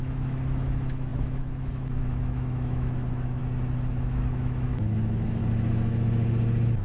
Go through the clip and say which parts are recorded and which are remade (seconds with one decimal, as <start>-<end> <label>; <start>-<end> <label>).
0.0-3.4 remade; 3.4-3.9 recorded; 3.9-5.4 remade; 5.4-6.8 recorded